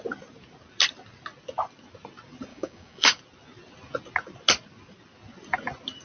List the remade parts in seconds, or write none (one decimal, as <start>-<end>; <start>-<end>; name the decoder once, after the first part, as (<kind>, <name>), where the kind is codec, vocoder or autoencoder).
2.5-3.2 (codec, DAC)